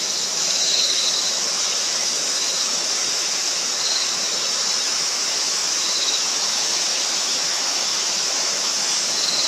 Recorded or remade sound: remade